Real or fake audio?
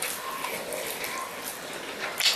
real